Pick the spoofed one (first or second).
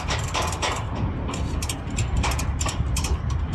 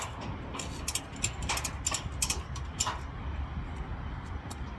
first